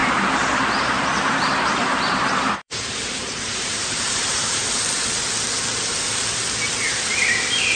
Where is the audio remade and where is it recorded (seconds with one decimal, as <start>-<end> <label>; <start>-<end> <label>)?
0.0-4.7 remade; 4.7-7.8 recorded